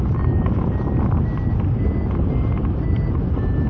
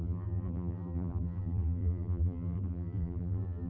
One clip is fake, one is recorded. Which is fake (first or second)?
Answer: second